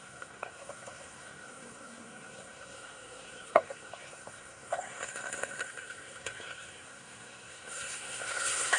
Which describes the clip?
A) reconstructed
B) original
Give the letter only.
A